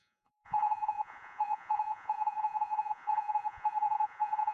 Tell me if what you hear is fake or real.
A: fake